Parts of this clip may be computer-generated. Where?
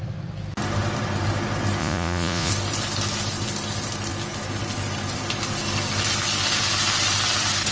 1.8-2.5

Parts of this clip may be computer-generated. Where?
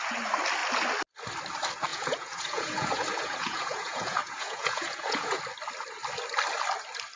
1.9-5.4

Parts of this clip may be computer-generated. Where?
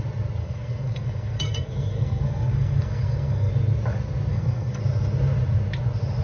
0.4-3.5; 4.3-4.8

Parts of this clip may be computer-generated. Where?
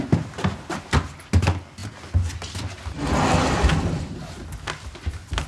none